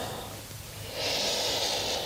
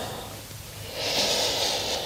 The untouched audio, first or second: first